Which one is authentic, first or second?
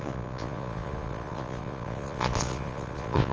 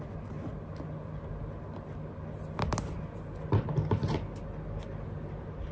second